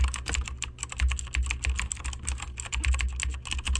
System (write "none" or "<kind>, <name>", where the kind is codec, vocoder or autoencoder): none